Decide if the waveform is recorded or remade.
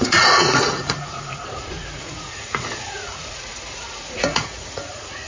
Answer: remade